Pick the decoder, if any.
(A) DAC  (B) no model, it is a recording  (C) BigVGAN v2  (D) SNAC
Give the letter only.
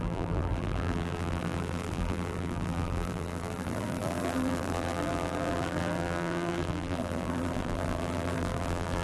C